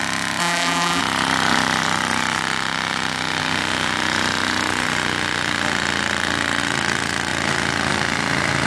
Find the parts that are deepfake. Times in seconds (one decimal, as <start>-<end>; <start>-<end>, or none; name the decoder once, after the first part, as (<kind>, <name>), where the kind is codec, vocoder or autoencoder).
0.4-1.0 (vocoder, BigVGAN v2)